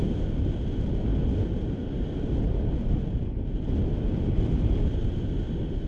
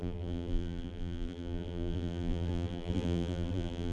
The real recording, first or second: first